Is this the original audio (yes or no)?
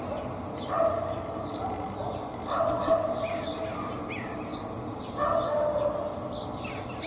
yes